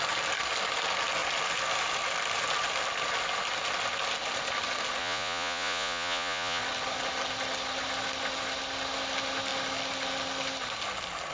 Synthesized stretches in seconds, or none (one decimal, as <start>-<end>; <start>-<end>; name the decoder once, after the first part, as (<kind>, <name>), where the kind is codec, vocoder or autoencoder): 5.0-6.6 (vocoder, Vocos)